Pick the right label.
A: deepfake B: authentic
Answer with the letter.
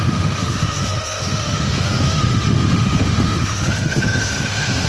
A